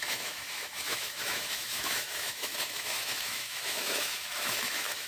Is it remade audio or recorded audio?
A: remade